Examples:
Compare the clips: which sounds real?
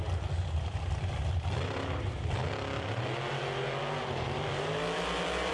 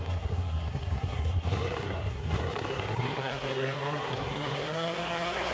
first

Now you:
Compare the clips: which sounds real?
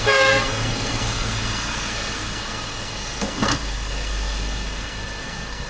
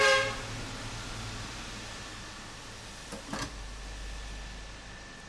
second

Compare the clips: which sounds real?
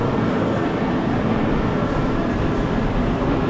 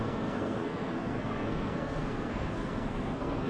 first